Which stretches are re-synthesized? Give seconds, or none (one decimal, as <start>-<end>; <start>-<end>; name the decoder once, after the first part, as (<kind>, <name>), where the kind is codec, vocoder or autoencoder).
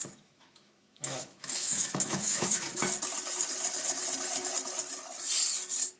0.0-2.8 (autoencoder, DAC-VAE)